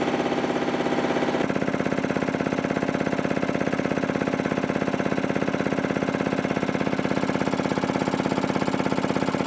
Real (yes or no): yes